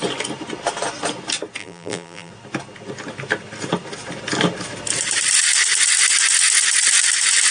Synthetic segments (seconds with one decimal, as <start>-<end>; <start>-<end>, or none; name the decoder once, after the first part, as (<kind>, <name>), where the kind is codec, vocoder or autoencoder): 1.6-2.3 (vocoder, BigVGAN v2)